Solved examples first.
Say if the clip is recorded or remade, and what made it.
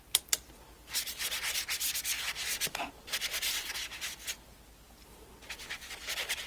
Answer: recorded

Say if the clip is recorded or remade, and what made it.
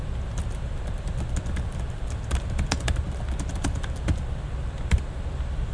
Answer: recorded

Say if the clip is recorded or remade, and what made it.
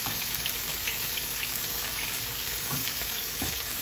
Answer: remade, codec, DAC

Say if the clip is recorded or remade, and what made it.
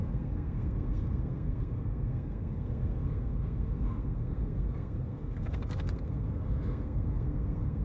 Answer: remade, codec, SNAC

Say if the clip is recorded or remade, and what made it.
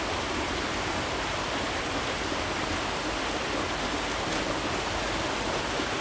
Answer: recorded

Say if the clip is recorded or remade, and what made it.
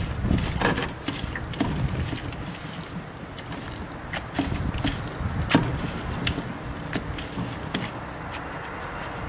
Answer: recorded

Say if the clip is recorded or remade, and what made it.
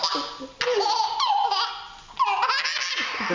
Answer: recorded